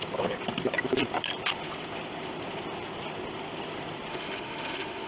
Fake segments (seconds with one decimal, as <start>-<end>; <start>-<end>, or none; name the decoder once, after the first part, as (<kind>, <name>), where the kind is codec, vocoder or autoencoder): 4.1-5.1 (autoencoder, DAC-VAE)

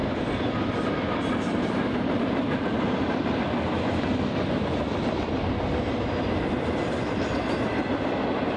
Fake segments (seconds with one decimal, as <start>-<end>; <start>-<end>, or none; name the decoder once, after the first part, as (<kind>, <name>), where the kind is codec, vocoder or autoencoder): none

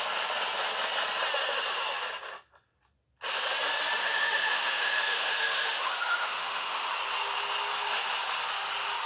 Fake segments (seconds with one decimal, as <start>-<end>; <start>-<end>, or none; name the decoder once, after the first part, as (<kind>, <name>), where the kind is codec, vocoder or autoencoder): 4.0-6.9 (autoencoder, DAC-VAE)

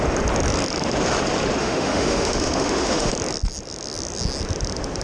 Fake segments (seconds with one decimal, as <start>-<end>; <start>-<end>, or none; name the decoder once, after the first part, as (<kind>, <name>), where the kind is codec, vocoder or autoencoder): 1.6-3.1 (autoencoder, DAC-VAE)

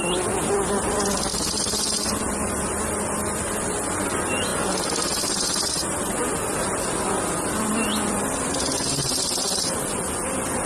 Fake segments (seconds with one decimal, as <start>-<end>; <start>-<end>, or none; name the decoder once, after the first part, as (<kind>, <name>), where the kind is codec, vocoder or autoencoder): none

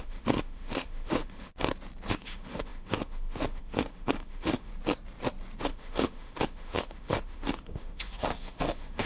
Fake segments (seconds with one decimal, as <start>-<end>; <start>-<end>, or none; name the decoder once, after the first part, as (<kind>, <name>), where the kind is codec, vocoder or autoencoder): 0.0-1.5 (autoencoder, DAC-VAE); 2.1-4.7; 5.6-9.1

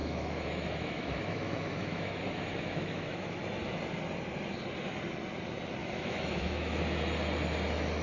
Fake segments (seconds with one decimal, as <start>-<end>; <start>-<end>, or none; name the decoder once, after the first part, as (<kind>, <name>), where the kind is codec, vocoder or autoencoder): 0.0-3.4 (autoencoder, DAC-VAE); 5.8-6.8